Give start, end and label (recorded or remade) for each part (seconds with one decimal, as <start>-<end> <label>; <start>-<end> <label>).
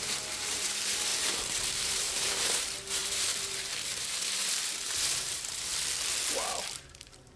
0.0-5.7 remade; 5.7-6.5 recorded; 6.5-7.4 remade